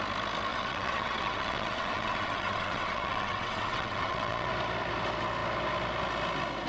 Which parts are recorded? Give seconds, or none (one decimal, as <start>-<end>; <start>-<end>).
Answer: 0.0-0.5; 4.5-6.7